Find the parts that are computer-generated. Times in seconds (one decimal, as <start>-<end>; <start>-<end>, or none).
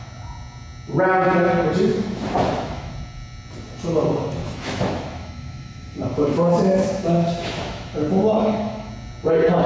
1.9-2.9; 4.4-8.9